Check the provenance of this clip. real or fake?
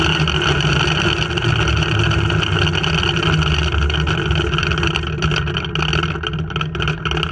real